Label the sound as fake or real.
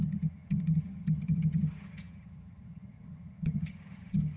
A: fake